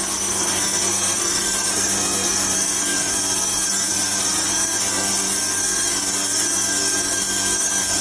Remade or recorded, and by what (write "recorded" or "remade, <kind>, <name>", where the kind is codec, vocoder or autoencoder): remade, codec, SNAC